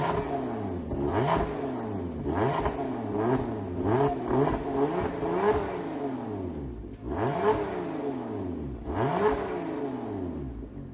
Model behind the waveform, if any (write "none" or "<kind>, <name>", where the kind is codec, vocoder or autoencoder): none